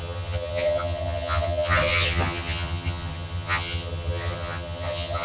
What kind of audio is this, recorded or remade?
remade